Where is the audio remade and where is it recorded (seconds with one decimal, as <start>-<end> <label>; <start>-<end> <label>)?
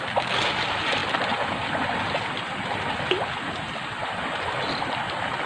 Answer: 0.0-5.5 recorded